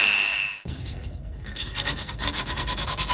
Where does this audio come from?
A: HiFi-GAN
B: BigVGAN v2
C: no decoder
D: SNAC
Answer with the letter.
D